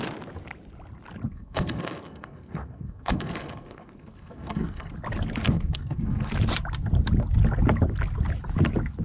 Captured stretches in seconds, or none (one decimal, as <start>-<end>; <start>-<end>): 0.0-1.3; 4.9-5.4; 6.3-9.0